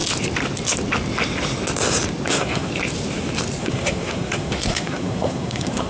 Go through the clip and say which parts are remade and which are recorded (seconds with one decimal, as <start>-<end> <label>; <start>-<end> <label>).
0.0-2.3 recorded; 2.3-2.7 remade; 2.7-3.6 recorded; 3.6-5.9 remade